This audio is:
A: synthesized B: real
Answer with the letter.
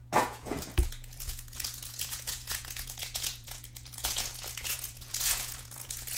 A